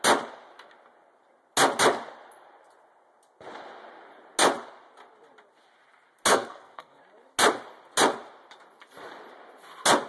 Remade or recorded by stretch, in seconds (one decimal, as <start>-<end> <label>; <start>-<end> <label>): 0.0-6.3 recorded; 6.3-7.0 remade; 7.0-10.1 recorded